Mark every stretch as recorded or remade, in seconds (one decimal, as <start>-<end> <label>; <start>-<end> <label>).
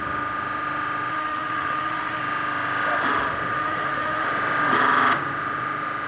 0.0-1.1 recorded; 1.1-2.2 remade; 2.2-3.5 recorded; 3.5-4.3 remade; 4.3-6.1 recorded